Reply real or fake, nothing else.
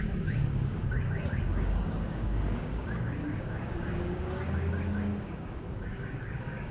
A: fake